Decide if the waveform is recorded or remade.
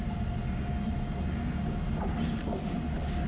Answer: recorded